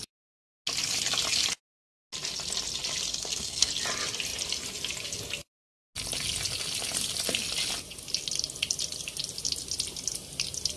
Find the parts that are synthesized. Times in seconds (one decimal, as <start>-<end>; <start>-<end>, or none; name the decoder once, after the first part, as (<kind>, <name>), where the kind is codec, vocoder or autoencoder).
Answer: 3.1-3.7 (codec, SNAC)